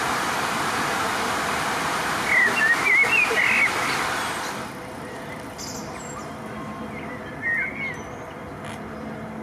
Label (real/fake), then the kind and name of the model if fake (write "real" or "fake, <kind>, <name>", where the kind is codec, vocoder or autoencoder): real